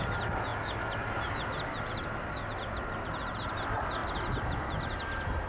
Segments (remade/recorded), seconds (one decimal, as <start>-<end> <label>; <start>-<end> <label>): 0.0-5.5 recorded